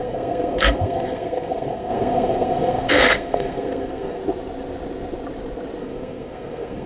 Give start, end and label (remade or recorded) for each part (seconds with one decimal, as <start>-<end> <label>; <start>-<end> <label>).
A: 0.0-4.2 remade; 4.2-5.8 recorded; 5.8-6.9 remade